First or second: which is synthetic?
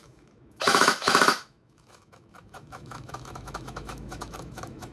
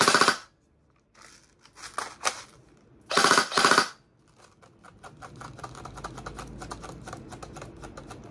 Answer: first